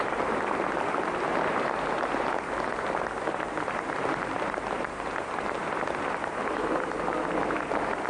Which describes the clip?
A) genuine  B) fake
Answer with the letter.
A